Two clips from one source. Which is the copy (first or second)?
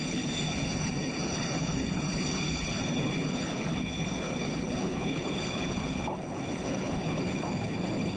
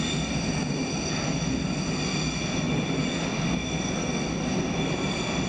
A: first